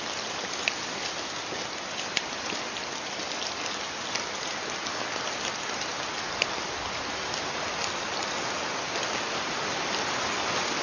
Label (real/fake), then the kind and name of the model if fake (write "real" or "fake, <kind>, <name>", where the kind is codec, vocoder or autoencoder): real